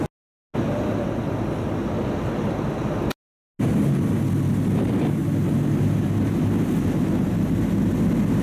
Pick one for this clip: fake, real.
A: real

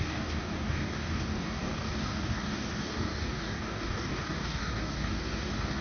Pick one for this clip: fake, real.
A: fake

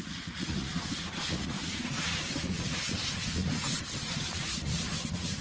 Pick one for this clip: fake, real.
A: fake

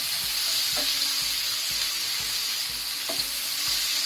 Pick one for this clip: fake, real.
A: real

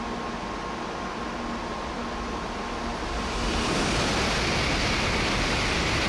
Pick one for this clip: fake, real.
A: real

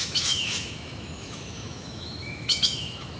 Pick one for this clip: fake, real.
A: fake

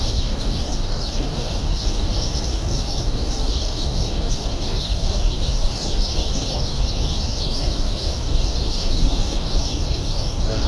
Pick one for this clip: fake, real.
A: fake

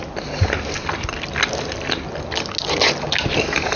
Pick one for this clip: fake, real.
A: real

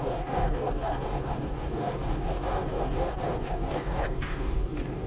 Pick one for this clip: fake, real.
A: fake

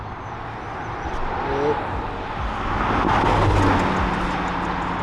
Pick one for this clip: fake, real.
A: real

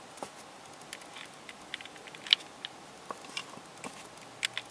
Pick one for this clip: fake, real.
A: real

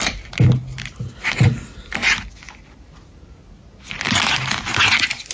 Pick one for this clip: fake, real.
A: real